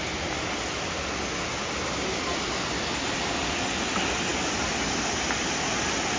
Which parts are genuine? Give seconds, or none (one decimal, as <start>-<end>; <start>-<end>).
0.0-6.2